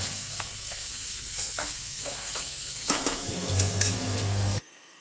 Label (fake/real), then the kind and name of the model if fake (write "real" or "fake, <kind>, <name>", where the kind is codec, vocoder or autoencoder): fake, codec, SNAC